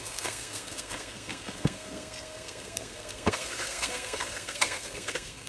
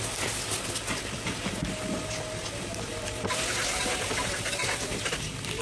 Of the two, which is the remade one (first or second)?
first